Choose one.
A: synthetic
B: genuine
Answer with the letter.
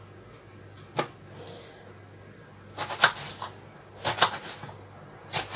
B